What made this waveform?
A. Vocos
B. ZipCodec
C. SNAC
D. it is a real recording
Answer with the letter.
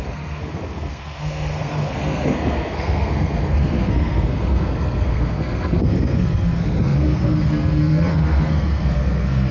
C